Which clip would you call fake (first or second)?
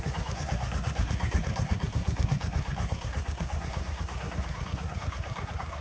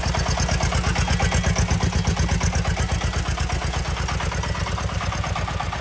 first